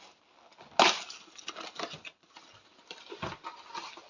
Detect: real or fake real